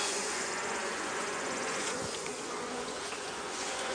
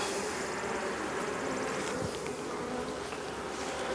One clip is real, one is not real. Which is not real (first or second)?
first